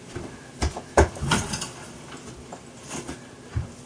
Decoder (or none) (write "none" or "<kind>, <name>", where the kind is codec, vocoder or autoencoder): none